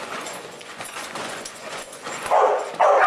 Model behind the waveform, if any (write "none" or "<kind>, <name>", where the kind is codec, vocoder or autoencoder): vocoder, Vocos